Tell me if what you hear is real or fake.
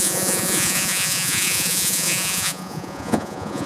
fake